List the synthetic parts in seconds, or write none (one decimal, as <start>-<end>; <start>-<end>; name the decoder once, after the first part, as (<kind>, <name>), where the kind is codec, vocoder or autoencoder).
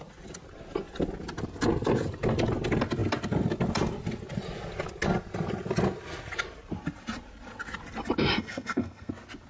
8.3-9.1 (codec, SNAC)